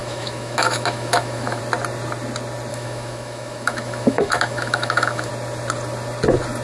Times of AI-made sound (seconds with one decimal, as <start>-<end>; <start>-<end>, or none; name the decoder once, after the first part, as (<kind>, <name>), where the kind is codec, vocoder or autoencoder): 0.0-1.6 (autoencoder, DAC-VAE); 2.7-5.3